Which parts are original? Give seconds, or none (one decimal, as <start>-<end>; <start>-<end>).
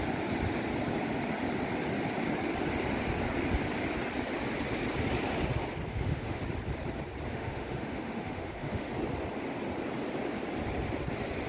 0.0-5.9; 6.4-7.3; 8.9-11.5